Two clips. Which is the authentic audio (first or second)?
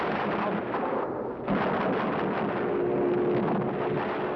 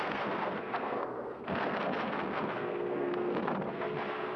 first